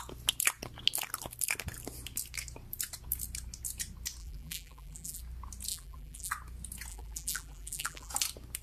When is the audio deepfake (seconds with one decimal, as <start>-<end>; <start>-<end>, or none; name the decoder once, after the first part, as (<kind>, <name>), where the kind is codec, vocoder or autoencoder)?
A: 4.2-5.2 (vocoder, BigVGAN v2); 5.7-6.3; 6.9-8.1